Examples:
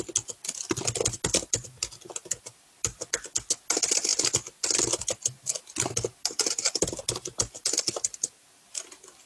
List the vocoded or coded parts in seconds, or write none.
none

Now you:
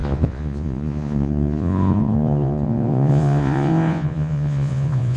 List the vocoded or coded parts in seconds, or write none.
0.0-5.2